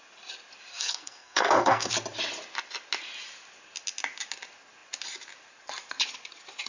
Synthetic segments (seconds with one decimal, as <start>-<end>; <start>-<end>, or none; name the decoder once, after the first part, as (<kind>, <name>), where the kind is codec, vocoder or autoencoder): 0.7-1.9 (codec, SNAC)